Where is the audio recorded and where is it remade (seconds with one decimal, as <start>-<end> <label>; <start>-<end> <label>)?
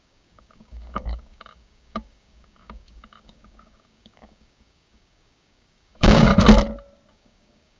0.0-6.3 remade; 6.3-7.1 recorded; 7.1-7.8 remade